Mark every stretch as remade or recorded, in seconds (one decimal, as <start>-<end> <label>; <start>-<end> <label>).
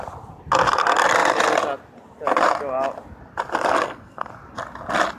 0.0-3.8 recorded; 3.8-4.3 remade; 4.3-5.2 recorded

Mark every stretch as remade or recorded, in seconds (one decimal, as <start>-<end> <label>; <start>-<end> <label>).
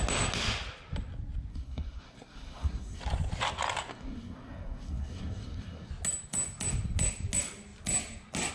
0.0-1.5 recorded; 1.5-3.0 remade; 3.0-3.9 recorded; 3.9-5.9 remade; 5.9-8.5 recorded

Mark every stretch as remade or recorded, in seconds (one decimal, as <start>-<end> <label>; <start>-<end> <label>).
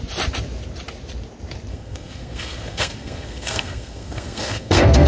0.0-1.7 recorded; 1.7-5.1 remade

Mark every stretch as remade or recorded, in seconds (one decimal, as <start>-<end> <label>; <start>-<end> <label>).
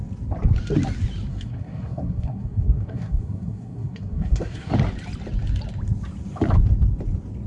0.0-1.3 recorded; 1.3-4.7 remade; 4.7-7.5 recorded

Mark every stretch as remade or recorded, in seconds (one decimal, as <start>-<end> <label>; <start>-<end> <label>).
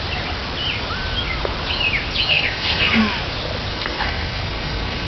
0.0-2.3 recorded; 2.3-3.0 remade; 3.0-3.7 recorded; 3.7-5.1 remade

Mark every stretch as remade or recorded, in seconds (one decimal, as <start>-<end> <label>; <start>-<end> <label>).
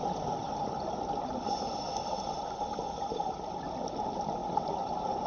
0.0-5.3 recorded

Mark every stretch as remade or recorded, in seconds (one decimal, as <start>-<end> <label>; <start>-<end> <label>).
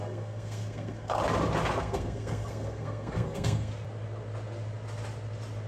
0.0-1.2 remade; 1.2-1.8 recorded; 1.8-3.7 remade; 3.7-5.7 recorded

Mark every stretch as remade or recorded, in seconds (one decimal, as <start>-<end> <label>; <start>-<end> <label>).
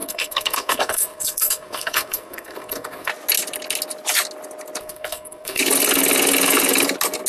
0.0-3.1 remade; 3.1-4.8 recorded; 4.8-5.6 remade; 5.6-7.3 recorded